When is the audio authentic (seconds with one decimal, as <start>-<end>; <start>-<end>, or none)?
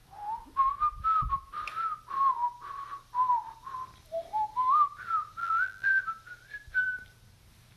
0.0-5.4; 6.0-7.8